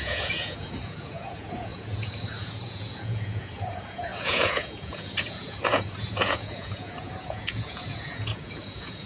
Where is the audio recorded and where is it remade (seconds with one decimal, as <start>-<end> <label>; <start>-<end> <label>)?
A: 0.0-9.1 remade